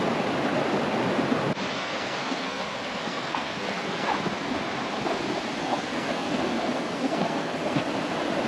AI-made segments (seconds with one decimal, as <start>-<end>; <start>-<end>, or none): 1.7-4.1; 5.6-7.9